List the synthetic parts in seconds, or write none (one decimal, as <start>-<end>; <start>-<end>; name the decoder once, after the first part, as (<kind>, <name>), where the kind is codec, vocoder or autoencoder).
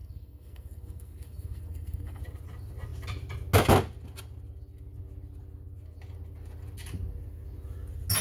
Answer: 0.0-2.2 (codec, SNAC)